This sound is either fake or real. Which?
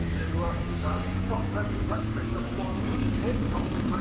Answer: fake